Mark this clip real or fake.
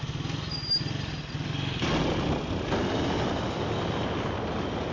real